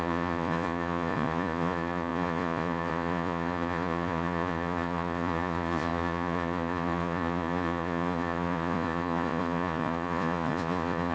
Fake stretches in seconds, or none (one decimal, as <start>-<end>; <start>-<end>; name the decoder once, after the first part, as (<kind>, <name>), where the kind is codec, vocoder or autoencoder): 0.0-11.1 (vocoder, Vocos)